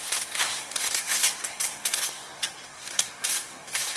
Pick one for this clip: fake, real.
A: fake